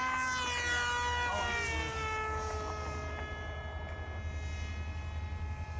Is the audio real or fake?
real